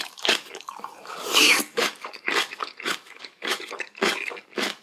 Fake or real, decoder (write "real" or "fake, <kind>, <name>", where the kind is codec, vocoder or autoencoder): fake, codec, DAC